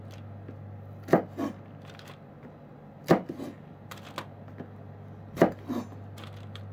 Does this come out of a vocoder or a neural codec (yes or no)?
no